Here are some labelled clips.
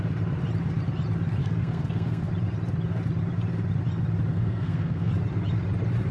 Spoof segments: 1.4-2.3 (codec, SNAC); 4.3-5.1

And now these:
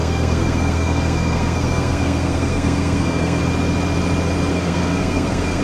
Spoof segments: 0.0-3.4 (codec, SNAC); 4.5-5.6

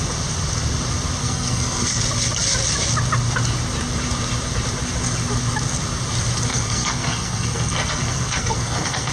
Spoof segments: 1.2-2.0 (codec, SNAC); 6.5-9.1

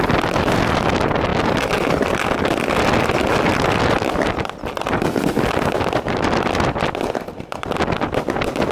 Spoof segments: none

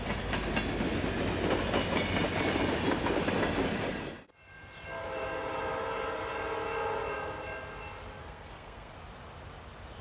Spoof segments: 8.2-8.9 (codec, SNAC)

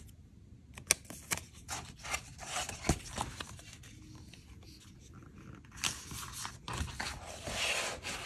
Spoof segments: none

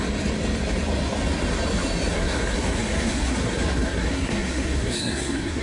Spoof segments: 2.1-5.6 (codec, SNAC)